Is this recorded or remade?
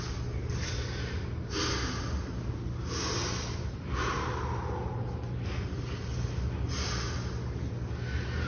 recorded